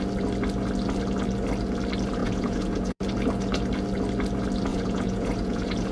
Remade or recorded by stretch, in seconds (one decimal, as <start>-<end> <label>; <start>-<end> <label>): 0.0-2.2 recorded; 2.2-3.0 remade; 3.0-4.7 recorded; 4.7-5.9 remade